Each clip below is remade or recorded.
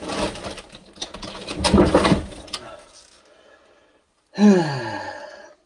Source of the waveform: recorded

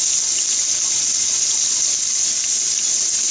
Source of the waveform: recorded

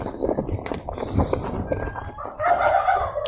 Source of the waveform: recorded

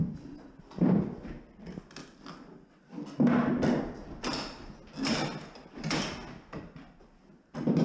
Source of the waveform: recorded